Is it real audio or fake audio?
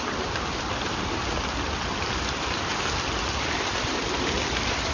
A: fake